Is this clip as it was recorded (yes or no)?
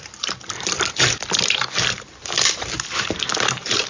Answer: no